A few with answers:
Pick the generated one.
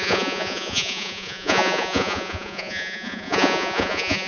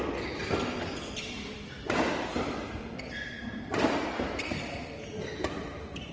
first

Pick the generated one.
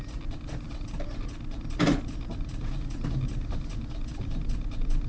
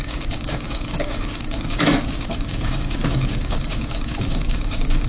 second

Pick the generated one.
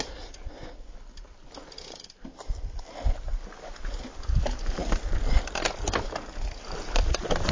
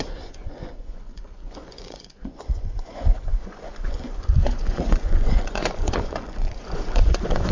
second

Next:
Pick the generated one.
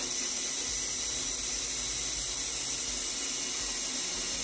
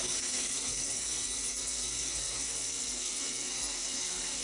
second